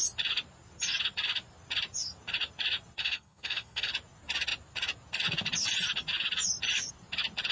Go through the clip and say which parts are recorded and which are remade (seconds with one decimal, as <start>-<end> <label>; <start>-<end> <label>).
0.0-3.0 recorded; 3.0-3.9 remade; 3.9-7.5 recorded